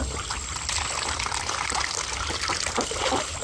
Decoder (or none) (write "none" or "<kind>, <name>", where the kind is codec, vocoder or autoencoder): none